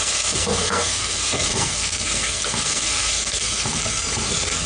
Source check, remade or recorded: remade